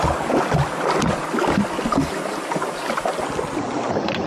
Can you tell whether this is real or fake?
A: real